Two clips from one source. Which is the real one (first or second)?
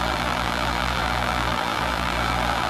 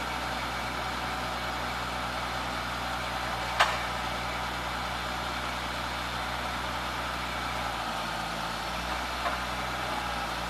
second